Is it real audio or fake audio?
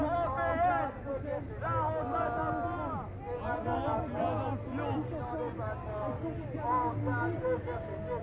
real